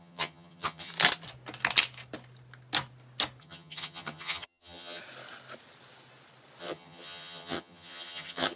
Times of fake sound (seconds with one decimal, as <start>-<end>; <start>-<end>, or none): 0.0-0.9; 3.4-5.0; 6.6-8.6